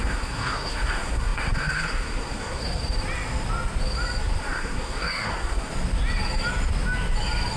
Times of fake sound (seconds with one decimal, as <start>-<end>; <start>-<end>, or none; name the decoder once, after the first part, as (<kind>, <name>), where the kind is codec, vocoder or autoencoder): 0.0-2.8 (codec, SNAC); 4.4-5.7